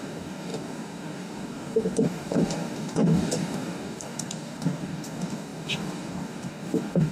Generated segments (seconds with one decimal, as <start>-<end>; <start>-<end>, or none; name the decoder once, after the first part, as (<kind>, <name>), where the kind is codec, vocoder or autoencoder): 0.0-7.1 (codec, DAC)